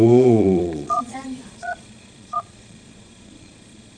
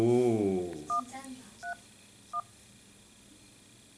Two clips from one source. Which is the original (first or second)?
second